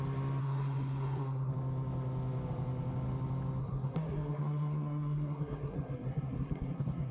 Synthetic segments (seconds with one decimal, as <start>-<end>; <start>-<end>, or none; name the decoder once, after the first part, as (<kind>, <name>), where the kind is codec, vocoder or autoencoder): 0.4-1.5 (codec, SNAC); 3.6-7.1

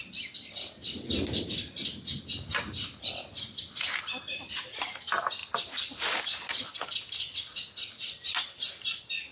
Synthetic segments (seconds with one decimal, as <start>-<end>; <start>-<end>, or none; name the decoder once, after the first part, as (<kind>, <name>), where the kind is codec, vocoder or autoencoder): 5.4-6.2 (vocoder, BigVGAN v2)

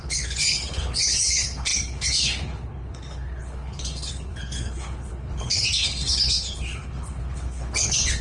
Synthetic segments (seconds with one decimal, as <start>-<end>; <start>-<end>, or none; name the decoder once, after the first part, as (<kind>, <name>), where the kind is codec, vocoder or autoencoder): 0.0-8.2 (codec, HILCodec)

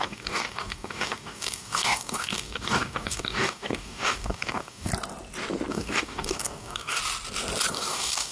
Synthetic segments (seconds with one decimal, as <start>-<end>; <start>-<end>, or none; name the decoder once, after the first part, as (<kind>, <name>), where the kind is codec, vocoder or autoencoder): 0.0-4.9 (codec, DAC); 5.7-7.0; 7.7-8.3